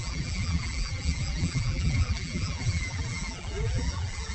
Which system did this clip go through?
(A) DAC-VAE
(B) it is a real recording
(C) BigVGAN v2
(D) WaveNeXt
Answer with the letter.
C